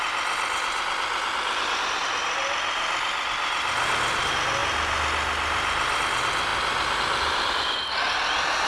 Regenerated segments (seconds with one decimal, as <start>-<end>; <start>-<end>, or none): none